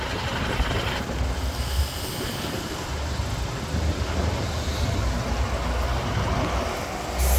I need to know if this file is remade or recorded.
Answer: recorded